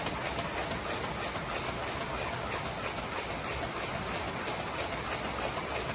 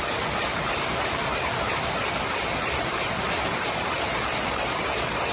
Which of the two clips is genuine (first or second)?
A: first